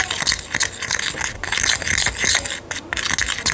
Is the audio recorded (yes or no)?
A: yes